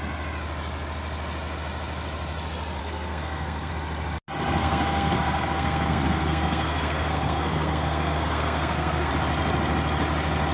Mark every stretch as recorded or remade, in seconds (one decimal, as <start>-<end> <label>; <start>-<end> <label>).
0.0-2.8 recorded; 2.8-3.7 remade; 3.7-4.6 recorded; 4.6-9.1 remade; 9.1-10.5 recorded